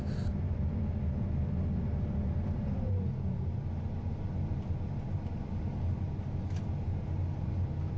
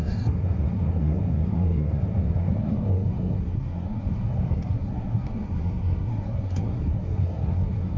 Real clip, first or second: first